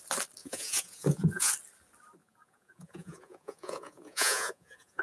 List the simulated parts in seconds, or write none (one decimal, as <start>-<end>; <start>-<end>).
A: 0.4-1.5; 2.2-5.0

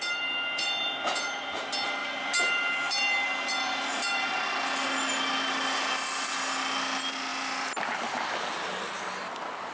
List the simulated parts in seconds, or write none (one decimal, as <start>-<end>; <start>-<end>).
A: none

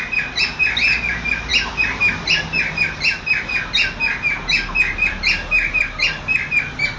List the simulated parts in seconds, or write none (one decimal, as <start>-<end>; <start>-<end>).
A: none

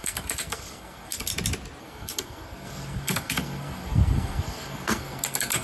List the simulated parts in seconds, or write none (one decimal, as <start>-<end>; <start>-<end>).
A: 0.0-1.3; 1.8-5.6